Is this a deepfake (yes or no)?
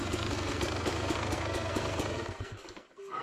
yes